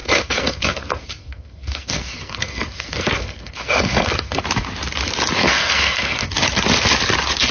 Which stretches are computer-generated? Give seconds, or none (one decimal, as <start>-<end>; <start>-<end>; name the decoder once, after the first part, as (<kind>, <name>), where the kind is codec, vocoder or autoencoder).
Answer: 0.0-4.4 (codec, SNAC); 5.4-6.3